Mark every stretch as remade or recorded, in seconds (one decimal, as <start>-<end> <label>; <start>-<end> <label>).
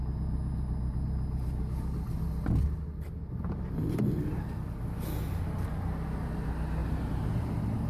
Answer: 0.0-6.8 recorded; 6.8-7.9 remade